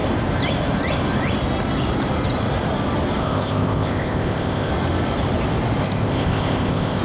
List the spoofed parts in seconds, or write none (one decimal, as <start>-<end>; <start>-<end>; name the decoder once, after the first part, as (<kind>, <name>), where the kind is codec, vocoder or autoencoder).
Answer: 3.2-4.7 (codec, ZipCodec); 5.8-7.0